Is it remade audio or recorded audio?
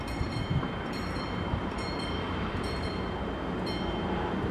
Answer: remade